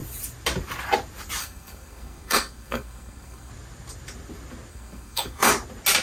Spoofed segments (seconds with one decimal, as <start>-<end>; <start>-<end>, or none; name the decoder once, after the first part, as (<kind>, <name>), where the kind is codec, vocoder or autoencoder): 1.4-3.5 (codec, SNAC); 4.7-5.5